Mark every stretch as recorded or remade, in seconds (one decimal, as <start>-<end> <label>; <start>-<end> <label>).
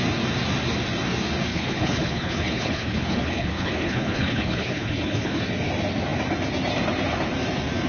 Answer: 0.0-1.5 recorded; 1.5-5.4 remade; 5.4-7.9 recorded